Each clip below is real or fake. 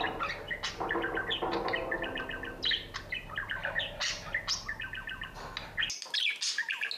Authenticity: real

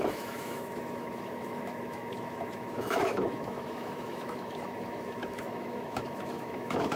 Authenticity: fake